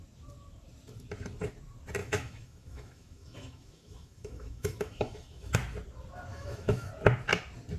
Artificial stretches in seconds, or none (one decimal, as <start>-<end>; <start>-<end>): 2.0-5.5; 6.3-6.9